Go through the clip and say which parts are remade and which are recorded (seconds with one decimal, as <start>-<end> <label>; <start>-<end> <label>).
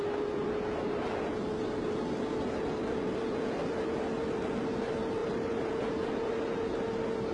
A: 0.0-5.2 recorded; 5.2-5.8 remade; 5.8-7.3 recorded